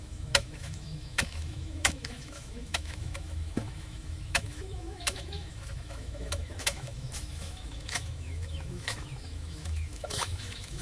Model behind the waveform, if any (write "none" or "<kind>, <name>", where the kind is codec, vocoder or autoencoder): autoencoder, DAC-VAE